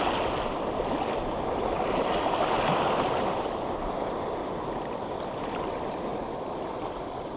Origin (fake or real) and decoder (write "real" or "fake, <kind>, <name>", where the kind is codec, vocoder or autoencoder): real